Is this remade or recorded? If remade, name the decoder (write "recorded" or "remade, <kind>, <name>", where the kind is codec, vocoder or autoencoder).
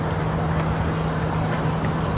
recorded